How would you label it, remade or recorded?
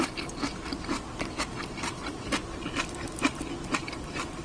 recorded